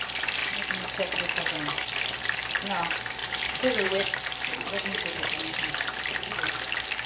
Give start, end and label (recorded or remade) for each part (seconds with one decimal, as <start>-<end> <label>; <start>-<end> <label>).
0.0-3.2 recorded; 3.2-5.7 remade; 5.7-7.1 recorded